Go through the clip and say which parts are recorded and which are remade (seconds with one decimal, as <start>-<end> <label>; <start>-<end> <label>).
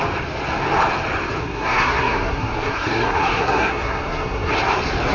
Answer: 0.0-1.4 recorded; 1.4-4.5 remade; 4.5-5.1 recorded